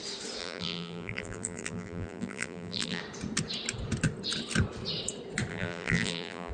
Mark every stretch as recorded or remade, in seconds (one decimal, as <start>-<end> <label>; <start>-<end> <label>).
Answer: 0.0-0.4 recorded; 0.4-3.0 remade; 3.0-5.5 recorded; 5.5-6.5 remade